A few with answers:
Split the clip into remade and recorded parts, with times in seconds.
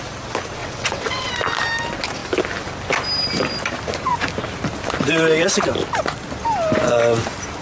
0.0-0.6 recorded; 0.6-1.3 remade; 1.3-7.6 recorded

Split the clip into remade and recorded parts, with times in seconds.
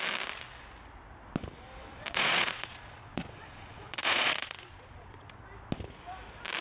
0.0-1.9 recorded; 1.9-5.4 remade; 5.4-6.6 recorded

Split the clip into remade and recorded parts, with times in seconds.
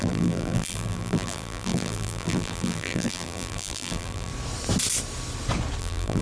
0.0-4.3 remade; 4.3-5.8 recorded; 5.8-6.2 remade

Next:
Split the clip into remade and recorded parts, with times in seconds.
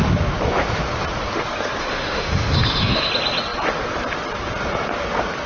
0.0-1.8 recorded; 1.8-3.1 remade; 3.1-5.5 recorded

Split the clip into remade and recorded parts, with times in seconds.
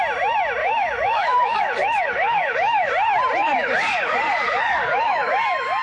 0.0-0.6 recorded; 0.6-2.9 remade; 2.9-3.4 recorded; 3.4-5.8 remade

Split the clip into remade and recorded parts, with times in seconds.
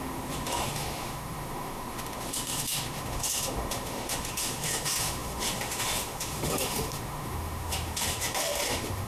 0.0-9.1 remade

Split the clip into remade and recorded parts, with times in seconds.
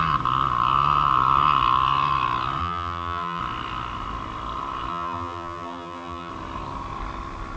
0.0-2.6 recorded; 2.6-3.4 remade; 3.4-4.9 recorded; 4.9-6.3 remade; 6.3-7.6 recorded